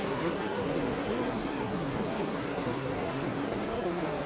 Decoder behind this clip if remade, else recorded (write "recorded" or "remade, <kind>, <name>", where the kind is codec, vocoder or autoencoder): remade, codec, SNAC